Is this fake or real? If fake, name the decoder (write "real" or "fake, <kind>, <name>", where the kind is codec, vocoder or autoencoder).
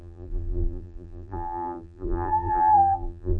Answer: fake, vocoder, BigVGAN v2